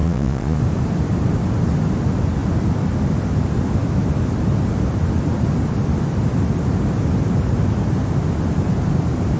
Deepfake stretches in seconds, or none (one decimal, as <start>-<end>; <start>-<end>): 0.0-0.6